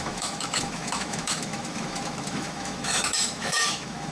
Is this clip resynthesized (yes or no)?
yes